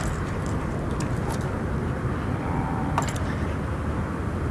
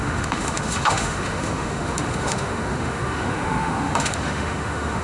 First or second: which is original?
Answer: first